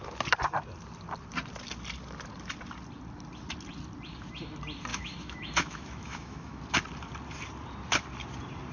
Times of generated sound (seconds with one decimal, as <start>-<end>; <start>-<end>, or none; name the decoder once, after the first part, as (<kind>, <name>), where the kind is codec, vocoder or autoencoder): 4.9-6.6 (autoencoder, DAC-VAE)